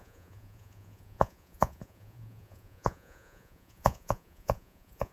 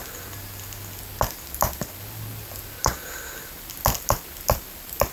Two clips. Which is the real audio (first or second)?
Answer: second